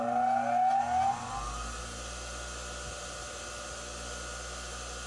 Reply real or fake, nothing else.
real